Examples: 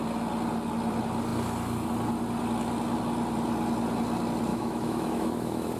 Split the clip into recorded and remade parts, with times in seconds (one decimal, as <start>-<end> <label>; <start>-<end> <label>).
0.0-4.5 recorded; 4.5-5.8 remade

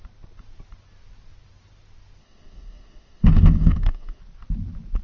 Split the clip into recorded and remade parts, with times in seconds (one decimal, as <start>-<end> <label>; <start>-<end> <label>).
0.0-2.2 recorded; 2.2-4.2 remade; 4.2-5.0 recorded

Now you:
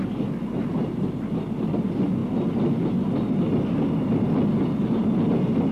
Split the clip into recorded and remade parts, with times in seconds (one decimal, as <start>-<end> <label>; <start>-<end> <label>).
0.0-5.7 recorded

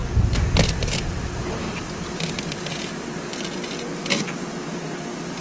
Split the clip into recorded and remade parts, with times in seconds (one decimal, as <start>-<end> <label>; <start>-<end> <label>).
0.0-5.4 recorded

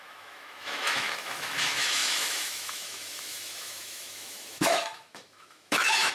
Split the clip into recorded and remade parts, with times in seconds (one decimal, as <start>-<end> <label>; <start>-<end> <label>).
0.0-6.1 remade